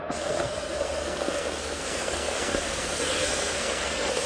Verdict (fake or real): fake